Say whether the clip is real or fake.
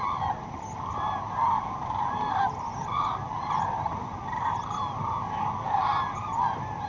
real